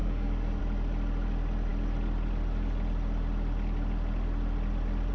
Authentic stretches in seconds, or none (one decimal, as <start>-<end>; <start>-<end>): 0.6-5.1